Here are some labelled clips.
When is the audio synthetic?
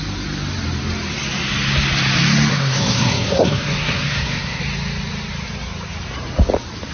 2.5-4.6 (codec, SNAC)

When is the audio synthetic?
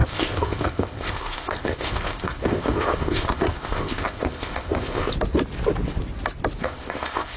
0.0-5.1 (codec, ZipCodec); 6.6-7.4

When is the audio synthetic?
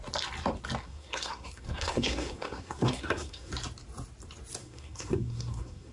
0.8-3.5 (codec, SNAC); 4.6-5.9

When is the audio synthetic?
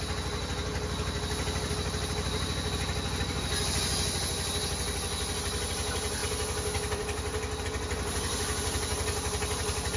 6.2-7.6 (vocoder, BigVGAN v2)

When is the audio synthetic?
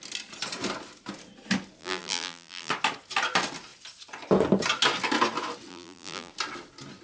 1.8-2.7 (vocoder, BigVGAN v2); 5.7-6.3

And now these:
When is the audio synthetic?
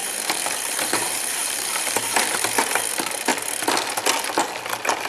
0.0-2.8 (vocoder, BigVGAN v2)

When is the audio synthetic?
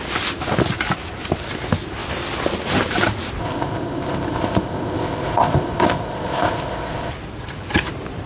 3.4-7.1 (codec, ZipCodec)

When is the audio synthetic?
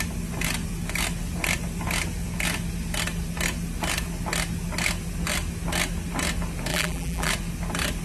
6.7-7.3 (vocoder, BigVGAN v2)